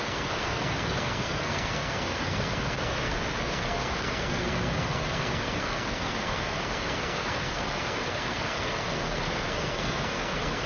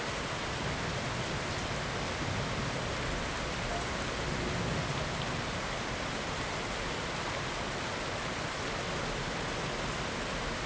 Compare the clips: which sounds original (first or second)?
second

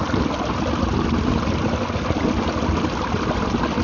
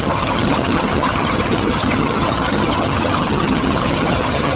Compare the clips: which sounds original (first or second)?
first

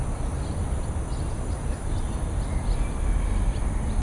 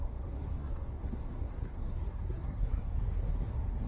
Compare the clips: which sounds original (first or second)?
first